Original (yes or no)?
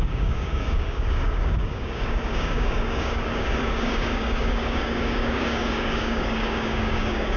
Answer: no